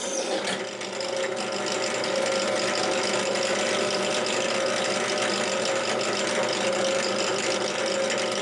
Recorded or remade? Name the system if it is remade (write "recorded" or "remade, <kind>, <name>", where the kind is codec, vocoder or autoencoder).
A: recorded